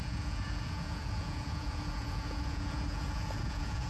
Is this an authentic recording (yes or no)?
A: no